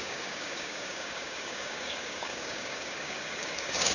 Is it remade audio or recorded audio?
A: remade